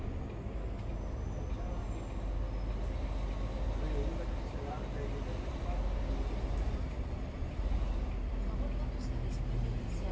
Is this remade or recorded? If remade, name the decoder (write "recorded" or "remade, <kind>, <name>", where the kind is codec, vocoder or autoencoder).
recorded